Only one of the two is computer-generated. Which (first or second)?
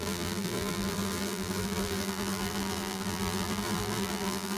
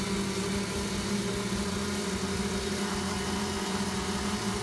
first